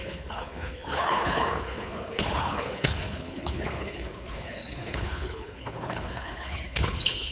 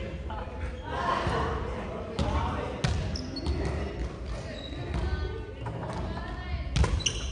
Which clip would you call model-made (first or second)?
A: first